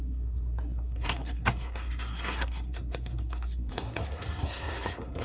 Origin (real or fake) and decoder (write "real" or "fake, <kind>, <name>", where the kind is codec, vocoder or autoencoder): fake, codec, SNAC